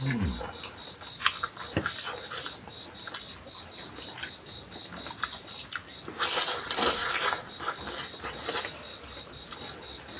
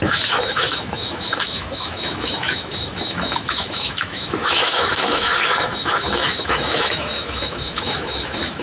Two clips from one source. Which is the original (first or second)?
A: first